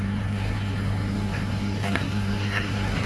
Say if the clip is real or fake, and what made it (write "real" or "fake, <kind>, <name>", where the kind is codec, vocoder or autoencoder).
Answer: fake, codec, SNAC